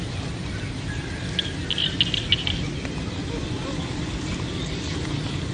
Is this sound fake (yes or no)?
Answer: no